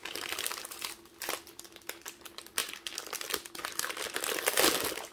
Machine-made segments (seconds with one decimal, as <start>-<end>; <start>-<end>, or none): none